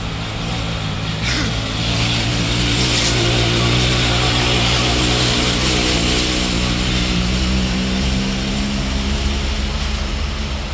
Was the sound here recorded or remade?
recorded